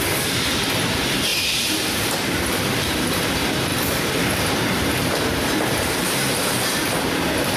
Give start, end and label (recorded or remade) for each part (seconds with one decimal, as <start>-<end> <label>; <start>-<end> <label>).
0.0-1.3 recorded; 1.3-2.1 remade; 2.1-3.7 recorded; 3.7-7.6 remade